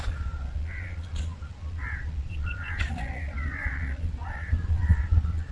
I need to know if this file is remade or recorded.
remade